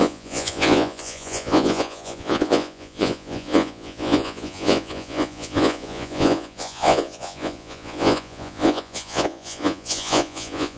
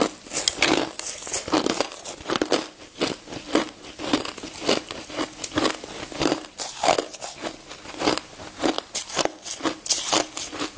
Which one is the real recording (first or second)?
second